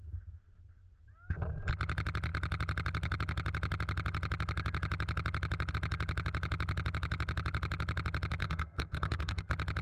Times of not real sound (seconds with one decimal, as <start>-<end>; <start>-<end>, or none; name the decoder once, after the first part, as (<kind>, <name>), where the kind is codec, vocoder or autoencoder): 8.4-9.4 (codec, SNAC)